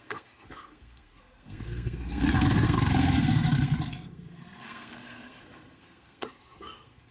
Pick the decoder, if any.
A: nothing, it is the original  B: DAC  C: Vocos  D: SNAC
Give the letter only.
D